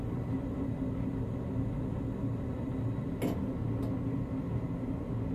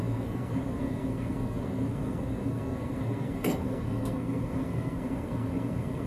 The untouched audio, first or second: first